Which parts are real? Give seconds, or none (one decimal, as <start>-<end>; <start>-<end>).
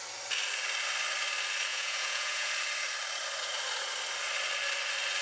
0.0-1.7; 2.5-5.2